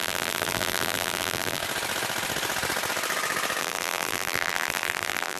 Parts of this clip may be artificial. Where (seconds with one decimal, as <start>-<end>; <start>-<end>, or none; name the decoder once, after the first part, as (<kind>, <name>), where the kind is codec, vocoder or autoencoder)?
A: 0.0-1.6 (vocoder, BigVGAN v2); 3.6-5.4